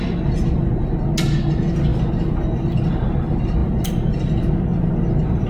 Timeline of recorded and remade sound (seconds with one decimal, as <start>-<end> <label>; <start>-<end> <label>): 0.0-3.6 recorded; 3.6-4.9 remade; 4.9-5.5 recorded